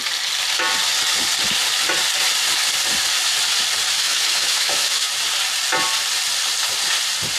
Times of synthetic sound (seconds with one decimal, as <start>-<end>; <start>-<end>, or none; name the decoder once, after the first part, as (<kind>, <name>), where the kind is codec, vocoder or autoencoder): 4.0-5.1 (autoencoder, DAC-VAE)